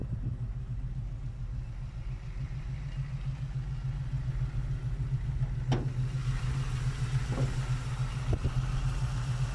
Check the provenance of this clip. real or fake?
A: real